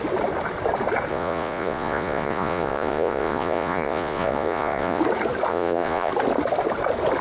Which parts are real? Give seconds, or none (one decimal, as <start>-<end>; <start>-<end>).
0.0-1.1; 5.0-5.5; 6.1-7.2